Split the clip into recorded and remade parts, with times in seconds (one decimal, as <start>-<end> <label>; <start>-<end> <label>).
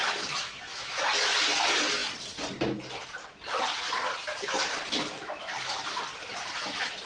0.0-1.0 remade; 1.0-5.1 recorded; 5.1-6.0 remade; 6.0-7.1 recorded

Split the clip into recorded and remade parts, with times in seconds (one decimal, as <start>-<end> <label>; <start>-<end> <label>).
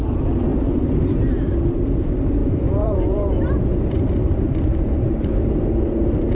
0.0-2.4 recorded; 2.4-6.3 remade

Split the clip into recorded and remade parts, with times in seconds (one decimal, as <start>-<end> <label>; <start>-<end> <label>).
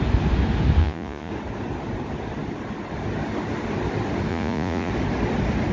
0.0-0.8 recorded; 0.8-1.3 remade; 1.3-4.3 recorded; 4.3-4.9 remade; 4.9-5.7 recorded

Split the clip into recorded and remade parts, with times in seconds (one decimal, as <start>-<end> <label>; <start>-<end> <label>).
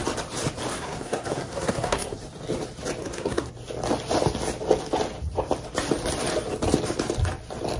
0.0-0.7 recorded; 0.7-2.2 remade; 2.2-3.0 recorded; 3.0-3.5 remade; 3.5-7.8 recorded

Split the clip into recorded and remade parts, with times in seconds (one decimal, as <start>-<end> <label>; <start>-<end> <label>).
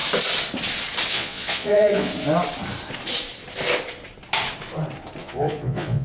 0.0-1.1 recorded; 1.1-2.1 remade; 2.1-5.2 recorded; 5.2-6.0 remade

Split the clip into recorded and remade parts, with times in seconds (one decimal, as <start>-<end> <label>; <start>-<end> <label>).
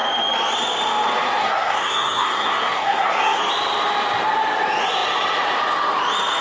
0.0-1.4 recorded; 1.4-3.4 remade; 3.4-6.4 recorded